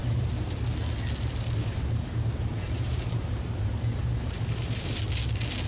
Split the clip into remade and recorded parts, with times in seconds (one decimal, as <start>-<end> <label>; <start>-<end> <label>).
0.0-0.6 remade; 0.6-1.6 recorded; 1.6-5.0 remade; 5.0-5.7 recorded